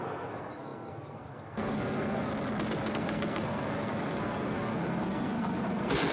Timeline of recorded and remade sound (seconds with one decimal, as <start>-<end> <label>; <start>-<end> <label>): 0.0-2.3 remade; 2.3-2.9 recorded; 2.9-6.1 remade

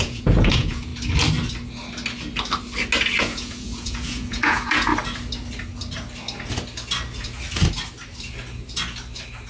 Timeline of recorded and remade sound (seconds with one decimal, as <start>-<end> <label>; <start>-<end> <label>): 0.0-0.9 remade; 0.9-3.2 recorded; 3.2-4.9 remade; 4.9-9.5 recorded

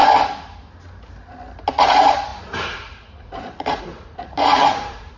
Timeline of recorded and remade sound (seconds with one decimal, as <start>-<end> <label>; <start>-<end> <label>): 0.0-1.7 recorded; 1.7-5.2 remade

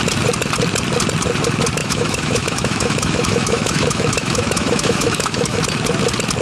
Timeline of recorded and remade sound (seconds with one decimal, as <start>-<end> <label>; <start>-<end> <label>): 0.0-1.8 recorded; 1.8-5.6 remade; 5.6-6.4 recorded

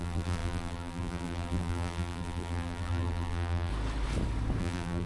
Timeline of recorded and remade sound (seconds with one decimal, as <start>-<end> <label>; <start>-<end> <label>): 0.0-3.7 remade; 3.7-4.6 recorded; 4.6-5.1 remade

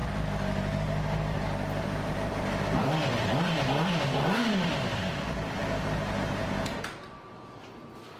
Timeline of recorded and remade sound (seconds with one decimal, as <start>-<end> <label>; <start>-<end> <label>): 0.0-2.3 recorded; 2.3-6.4 remade; 6.4-7.3 recorded; 7.3-8.2 remade

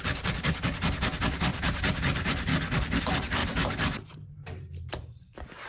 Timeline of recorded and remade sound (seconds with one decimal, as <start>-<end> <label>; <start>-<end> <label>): 0.0-1.5 recorded; 1.5-2.0 remade; 2.0-5.7 recorded